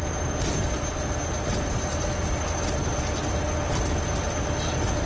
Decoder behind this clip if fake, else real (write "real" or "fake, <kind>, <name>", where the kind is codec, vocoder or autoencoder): real